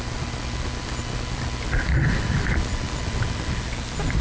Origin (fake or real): real